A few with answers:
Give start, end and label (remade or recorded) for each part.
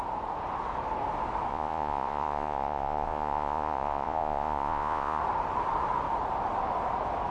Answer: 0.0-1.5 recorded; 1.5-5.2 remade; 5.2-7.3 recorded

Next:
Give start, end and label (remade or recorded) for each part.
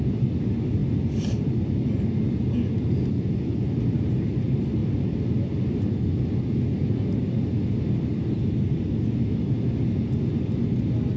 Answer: 0.0-11.2 recorded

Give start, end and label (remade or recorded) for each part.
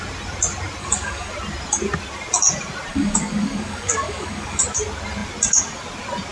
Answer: 0.0-0.8 recorded; 0.8-1.3 remade; 1.3-2.9 recorded; 2.9-4.6 remade; 4.6-6.3 recorded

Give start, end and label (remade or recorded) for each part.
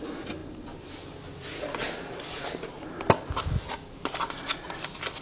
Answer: 0.0-5.2 recorded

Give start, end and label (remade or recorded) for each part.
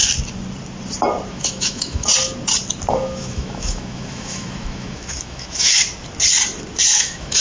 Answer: 0.0-1.3 recorded; 1.3-2.1 remade; 2.1-2.9 recorded; 2.9-5.7 remade; 5.7-7.0 recorded; 7.0-7.4 remade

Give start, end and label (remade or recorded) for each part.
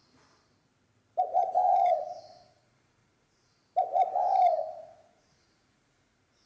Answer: 0.0-1.3 recorded; 1.3-3.6 remade; 3.6-5.1 recorded; 5.1-6.5 remade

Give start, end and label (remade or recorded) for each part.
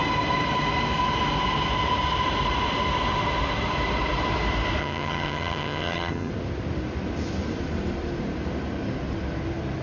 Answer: 0.0-4.8 recorded; 4.8-6.3 remade; 6.3-9.8 recorded